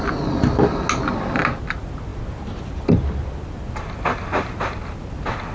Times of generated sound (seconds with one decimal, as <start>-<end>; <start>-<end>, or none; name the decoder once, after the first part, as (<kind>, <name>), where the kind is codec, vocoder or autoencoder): none